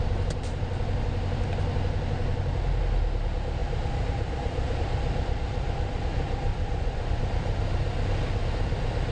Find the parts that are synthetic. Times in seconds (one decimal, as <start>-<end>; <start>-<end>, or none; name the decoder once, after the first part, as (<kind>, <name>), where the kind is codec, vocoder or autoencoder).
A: 6.5-7.2 (vocoder, Vocos)